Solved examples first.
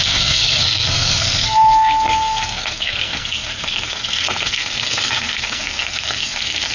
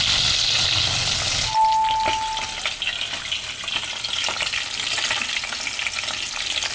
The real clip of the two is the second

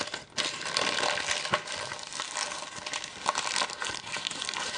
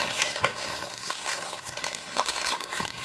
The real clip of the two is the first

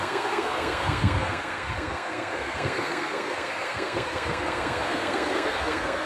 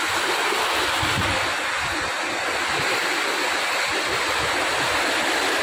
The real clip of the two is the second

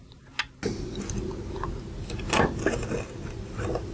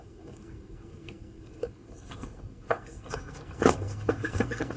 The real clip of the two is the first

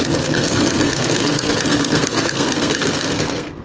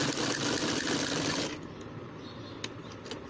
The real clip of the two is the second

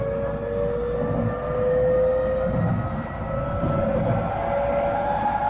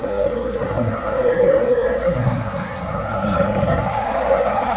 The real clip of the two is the first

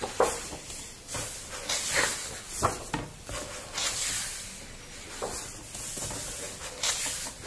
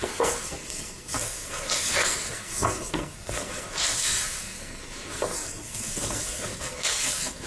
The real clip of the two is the first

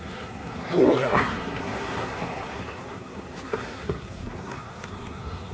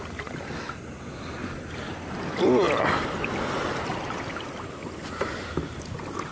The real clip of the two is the second